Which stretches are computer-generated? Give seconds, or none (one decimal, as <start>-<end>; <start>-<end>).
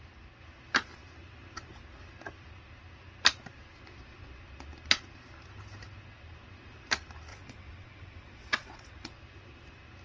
7.3-9.1